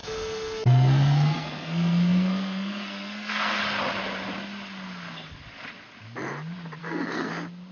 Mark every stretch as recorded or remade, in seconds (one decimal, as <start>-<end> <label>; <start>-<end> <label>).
0.0-3.6 remade; 3.6-6.8 recorded; 6.8-7.3 remade; 7.3-7.7 recorded

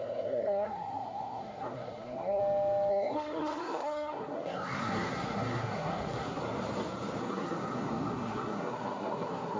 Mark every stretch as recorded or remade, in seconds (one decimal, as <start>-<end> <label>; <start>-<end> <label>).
0.0-2.4 remade; 2.4-2.9 recorded; 2.9-6.4 remade; 6.4-7.2 recorded; 7.2-9.6 remade

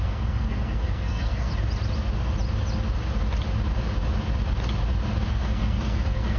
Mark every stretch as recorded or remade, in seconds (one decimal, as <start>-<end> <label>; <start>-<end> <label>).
0.0-1.5 remade; 1.5-5.3 recorded; 5.3-6.4 remade

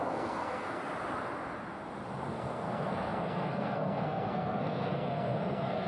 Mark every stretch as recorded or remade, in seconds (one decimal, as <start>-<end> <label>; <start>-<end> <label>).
0.0-0.8 remade; 0.8-2.3 recorded; 2.3-5.9 remade

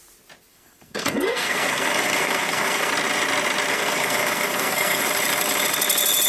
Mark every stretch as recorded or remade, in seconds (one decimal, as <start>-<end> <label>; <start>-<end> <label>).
0.0-0.5 recorded; 0.5-2.9 remade; 2.9-3.7 recorded; 3.7-5.0 remade; 5.0-6.3 recorded